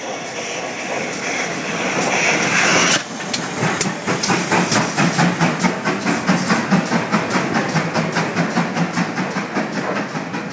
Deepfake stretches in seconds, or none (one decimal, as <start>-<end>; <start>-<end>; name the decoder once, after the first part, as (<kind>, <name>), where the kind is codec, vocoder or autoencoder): none